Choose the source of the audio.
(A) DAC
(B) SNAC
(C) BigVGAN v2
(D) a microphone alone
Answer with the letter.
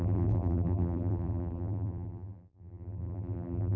C